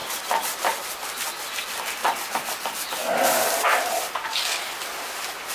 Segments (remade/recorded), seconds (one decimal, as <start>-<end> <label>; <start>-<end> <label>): 0.0-1.6 recorded; 1.6-5.5 remade